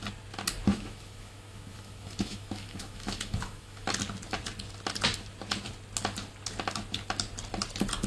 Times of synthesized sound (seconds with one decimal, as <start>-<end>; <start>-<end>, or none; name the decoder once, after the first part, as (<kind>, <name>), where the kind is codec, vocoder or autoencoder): 0.7-3.9 (autoencoder, DAC-VAE)